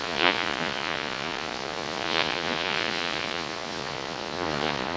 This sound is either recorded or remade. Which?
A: remade